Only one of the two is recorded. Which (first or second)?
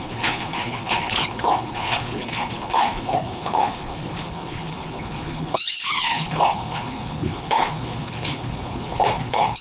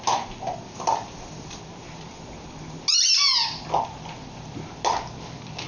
second